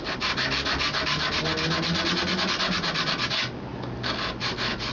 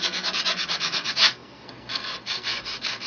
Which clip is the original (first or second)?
first